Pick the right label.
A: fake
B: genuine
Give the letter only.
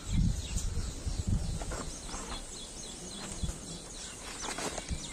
B